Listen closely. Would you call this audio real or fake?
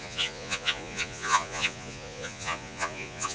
fake